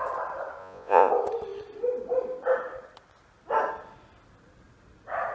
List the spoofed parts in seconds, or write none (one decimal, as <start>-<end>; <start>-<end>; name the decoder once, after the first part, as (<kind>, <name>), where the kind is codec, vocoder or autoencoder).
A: 0.6-1.1 (vocoder, Vocos)